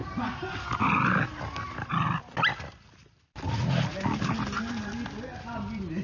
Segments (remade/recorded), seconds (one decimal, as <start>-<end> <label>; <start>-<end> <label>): 0.0-6.0 recorded